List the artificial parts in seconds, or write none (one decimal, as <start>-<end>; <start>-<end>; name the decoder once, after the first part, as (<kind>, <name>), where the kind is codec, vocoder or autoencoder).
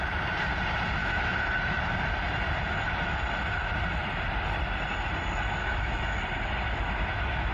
1.0-1.8 (autoencoder, DAC-VAE); 5.6-6.2